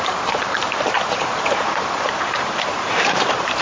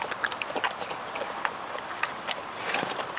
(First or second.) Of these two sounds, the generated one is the first